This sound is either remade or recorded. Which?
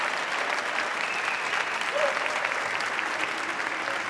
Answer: recorded